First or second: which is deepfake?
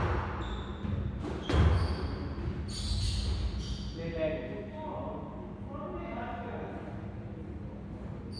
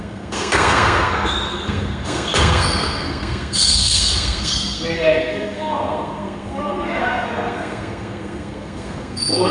second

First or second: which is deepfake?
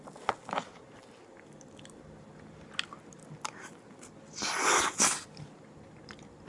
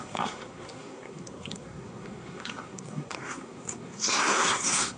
second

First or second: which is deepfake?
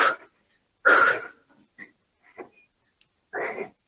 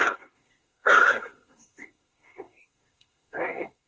second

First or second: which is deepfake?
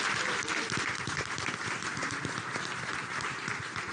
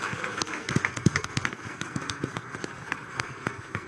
second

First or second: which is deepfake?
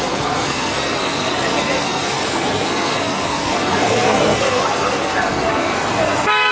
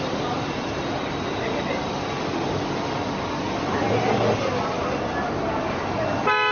first